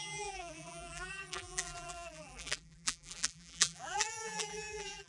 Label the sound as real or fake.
fake